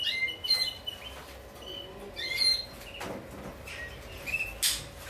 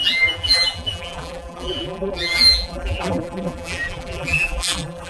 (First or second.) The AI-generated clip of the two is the second